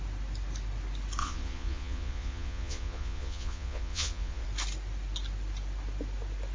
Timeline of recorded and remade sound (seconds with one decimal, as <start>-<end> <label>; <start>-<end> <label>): 0.0-1.2 recorded; 1.2-4.4 remade; 4.4-6.5 recorded